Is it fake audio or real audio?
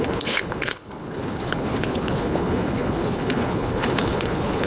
fake